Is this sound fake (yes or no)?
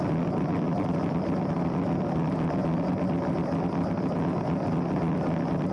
no